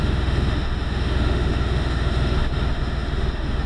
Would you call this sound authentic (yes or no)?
no